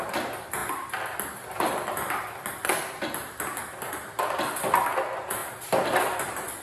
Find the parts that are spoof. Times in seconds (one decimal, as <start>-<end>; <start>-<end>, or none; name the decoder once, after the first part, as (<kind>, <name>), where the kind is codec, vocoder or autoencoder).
none